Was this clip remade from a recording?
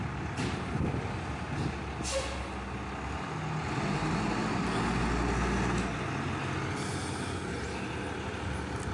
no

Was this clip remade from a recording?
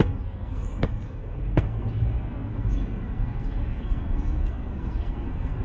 yes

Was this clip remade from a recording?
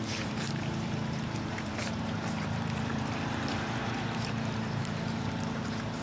yes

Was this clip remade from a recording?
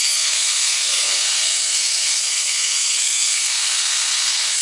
yes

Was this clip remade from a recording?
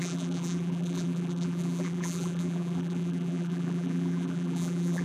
yes